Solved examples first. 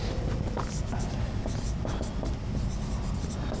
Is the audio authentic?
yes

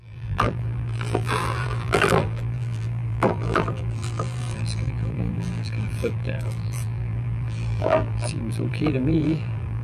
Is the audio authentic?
no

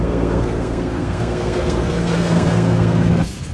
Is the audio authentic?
no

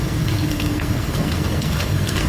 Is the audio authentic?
no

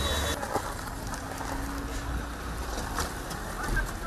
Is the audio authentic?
yes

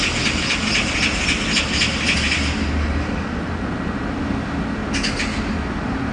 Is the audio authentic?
yes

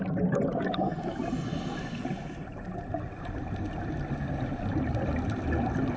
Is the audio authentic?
yes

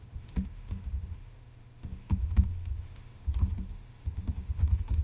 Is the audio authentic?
no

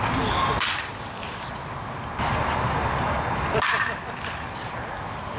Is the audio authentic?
yes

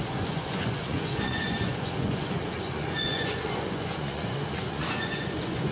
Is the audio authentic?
no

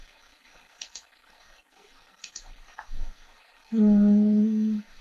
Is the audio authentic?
no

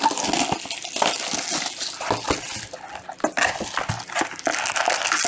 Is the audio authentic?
yes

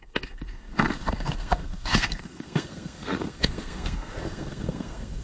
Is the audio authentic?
no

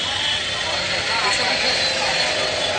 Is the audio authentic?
yes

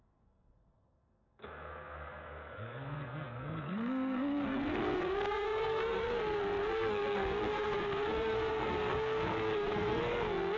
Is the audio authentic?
no